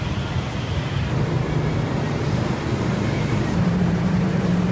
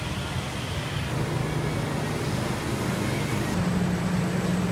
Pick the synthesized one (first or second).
first